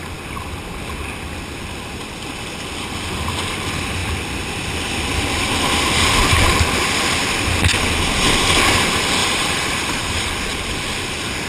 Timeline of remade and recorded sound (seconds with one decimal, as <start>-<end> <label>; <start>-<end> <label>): 0.0-9.2 recorded; 9.2-10.3 remade; 10.3-11.5 recorded